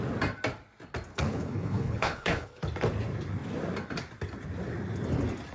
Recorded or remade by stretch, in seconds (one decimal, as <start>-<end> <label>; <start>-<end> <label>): 0.0-1.1 recorded; 1.1-2.6 remade; 2.6-5.5 recorded